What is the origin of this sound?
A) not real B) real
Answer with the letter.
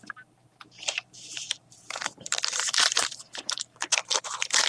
A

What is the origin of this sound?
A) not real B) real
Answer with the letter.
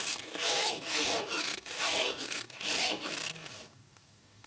A